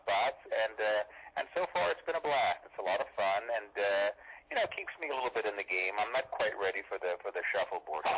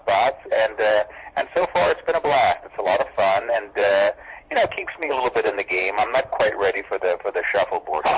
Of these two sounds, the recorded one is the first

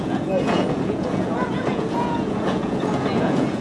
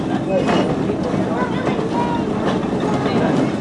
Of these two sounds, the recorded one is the second